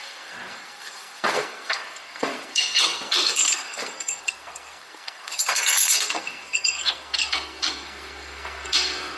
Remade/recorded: remade